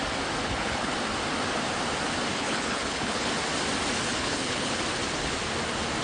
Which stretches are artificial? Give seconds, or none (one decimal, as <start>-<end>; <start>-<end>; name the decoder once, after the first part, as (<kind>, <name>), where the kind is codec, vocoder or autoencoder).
0.4-0.9 (codec, HILCodec); 2.3-3.3; 4.1-4.8